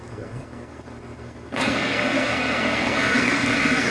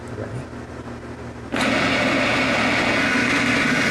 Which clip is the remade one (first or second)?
first